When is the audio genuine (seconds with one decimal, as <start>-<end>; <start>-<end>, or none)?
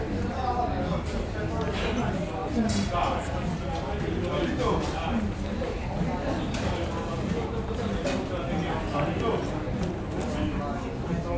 0.0-11.4